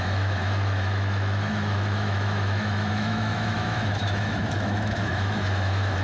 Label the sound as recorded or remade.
remade